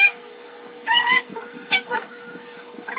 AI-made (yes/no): yes